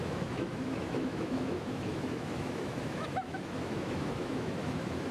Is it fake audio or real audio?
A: fake